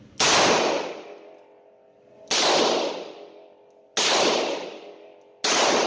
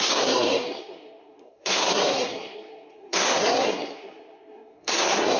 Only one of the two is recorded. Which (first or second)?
first